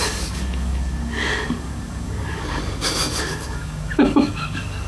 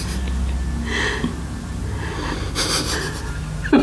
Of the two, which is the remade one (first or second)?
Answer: first